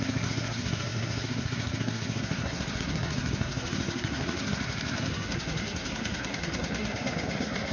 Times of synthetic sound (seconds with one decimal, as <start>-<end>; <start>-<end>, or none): 0.0-7.7